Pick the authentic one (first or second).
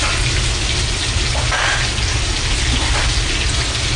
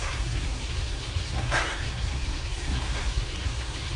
first